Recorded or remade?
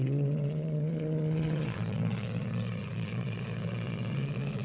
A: remade